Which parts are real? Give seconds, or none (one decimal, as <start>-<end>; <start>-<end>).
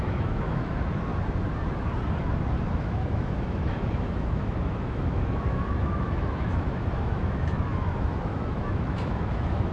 1.1-2.8